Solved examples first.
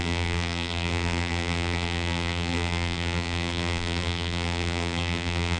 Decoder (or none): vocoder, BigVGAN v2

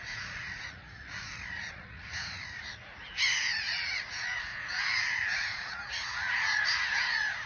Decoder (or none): vocoder, Vocos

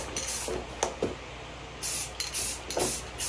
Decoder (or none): none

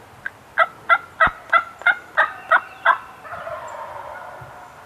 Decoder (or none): none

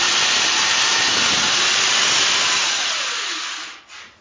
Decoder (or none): none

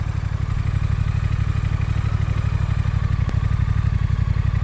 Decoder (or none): none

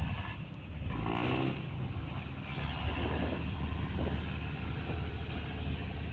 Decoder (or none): none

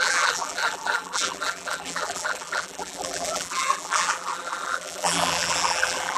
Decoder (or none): vocoder, BigVGAN v2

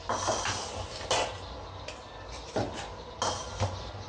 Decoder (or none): none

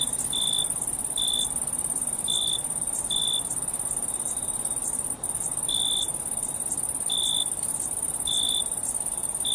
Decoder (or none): none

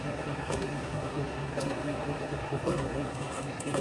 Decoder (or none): codec, SNAC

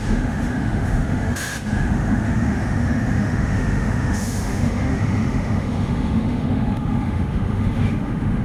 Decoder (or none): autoencoder, DAC-VAE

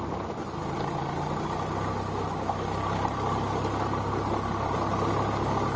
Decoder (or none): none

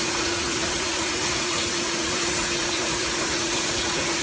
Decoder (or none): vocoder, Vocos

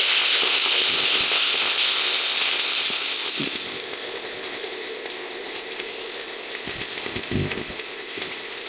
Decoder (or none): codec, ZipCodec